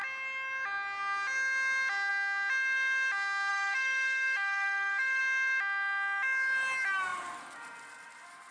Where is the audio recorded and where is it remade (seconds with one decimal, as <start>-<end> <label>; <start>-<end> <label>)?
0.0-3.5 recorded; 3.5-5.2 remade; 5.2-8.5 recorded